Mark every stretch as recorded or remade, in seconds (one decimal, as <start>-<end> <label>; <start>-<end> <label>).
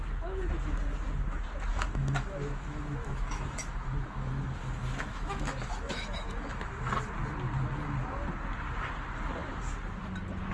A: 0.0-1.7 recorded; 1.7-6.9 remade; 6.9-10.5 recorded